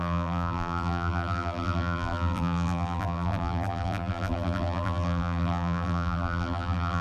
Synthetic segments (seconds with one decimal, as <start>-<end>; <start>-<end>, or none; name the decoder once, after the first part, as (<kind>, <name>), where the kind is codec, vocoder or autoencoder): 0.0-7.0 (vocoder, BigVGAN v2)